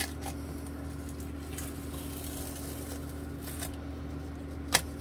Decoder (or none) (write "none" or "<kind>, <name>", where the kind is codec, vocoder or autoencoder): none